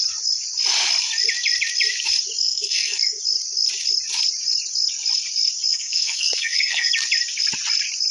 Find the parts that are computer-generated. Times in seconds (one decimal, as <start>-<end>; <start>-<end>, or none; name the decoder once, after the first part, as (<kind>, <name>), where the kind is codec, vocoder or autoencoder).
2.4-3.2 (codec, SNAC); 5.7-6.9